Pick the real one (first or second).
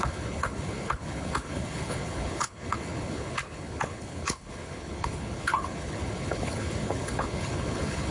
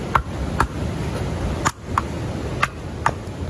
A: second